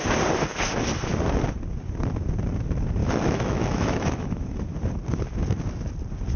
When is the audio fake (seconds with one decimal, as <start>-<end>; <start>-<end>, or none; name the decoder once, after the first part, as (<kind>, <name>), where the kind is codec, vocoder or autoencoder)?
3.0-4.6 (autoencoder, DAC-VAE)